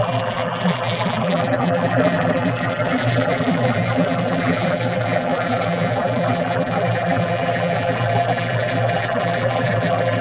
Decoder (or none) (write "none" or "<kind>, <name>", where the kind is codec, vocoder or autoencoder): vocoder, BigVGAN v2